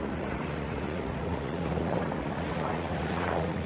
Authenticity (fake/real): fake